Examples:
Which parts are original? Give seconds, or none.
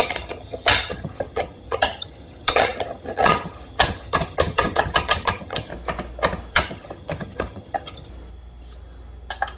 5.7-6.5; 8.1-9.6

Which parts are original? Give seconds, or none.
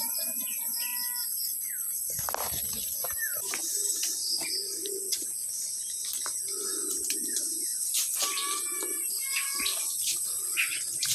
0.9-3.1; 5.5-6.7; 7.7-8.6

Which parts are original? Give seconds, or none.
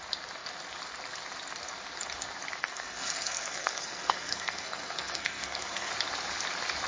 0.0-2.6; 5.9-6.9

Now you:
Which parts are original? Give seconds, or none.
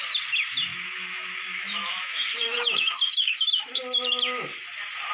0.0-0.7; 3.8-5.1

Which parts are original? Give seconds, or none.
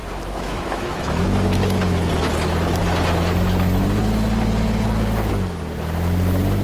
2.1-6.6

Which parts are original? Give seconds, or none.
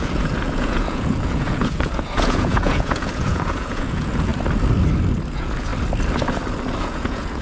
4.3-5.3; 5.7-6.8